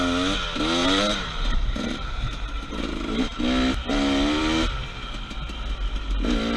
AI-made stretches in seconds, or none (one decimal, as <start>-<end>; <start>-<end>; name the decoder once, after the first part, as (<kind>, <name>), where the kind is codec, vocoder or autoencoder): 0.8-3.4 (vocoder, BigVGAN v2)